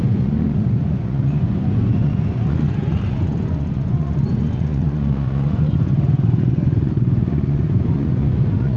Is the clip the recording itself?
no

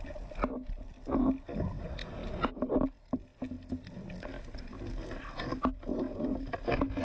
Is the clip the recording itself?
yes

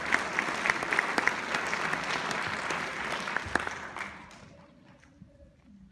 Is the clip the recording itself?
yes